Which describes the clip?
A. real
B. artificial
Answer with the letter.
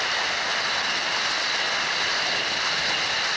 A